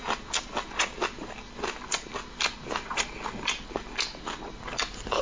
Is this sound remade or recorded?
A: recorded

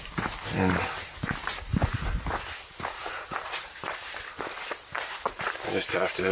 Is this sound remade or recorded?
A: remade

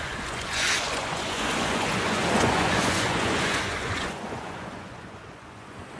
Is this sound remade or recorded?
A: remade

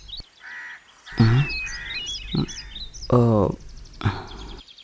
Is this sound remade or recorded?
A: recorded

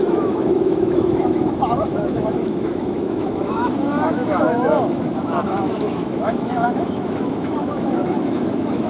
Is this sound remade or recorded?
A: remade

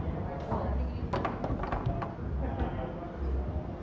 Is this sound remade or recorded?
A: recorded